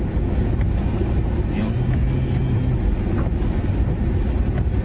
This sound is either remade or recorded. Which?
recorded